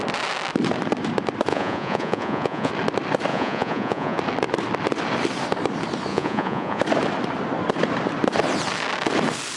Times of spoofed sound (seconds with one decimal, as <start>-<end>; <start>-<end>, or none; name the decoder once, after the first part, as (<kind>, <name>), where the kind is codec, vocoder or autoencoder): 1.5-2.7 (vocoder, Vocos); 3.3-4.2; 6.1-6.8